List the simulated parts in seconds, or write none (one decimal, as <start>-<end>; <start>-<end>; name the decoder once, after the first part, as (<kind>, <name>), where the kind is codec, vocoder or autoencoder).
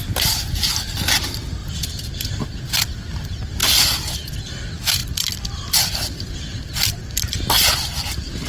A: 5.0-6.7 (vocoder, BigVGAN v2)